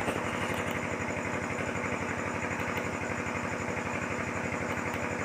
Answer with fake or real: real